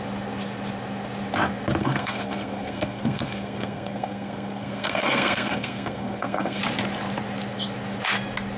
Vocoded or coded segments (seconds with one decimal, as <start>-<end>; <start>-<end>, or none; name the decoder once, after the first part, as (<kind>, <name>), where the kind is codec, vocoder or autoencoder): 1.8-6.6 (codec, SNAC)